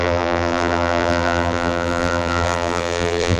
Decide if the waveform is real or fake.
fake